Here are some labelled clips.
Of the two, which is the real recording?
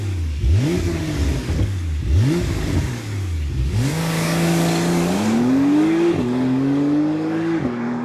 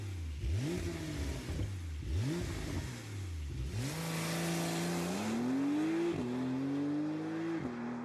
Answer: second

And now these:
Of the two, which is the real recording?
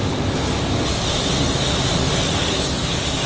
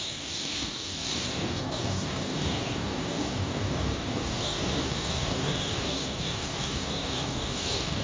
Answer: first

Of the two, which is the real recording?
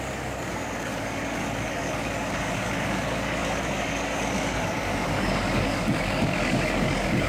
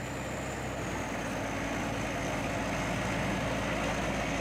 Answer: second